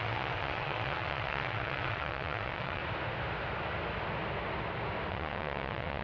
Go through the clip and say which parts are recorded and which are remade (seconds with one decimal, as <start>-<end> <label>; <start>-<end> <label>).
0.0-2.8 remade; 2.8-5.1 recorded; 5.1-6.0 remade